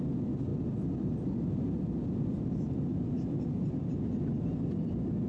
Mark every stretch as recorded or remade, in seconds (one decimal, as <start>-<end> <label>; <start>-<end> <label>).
0.0-5.3 recorded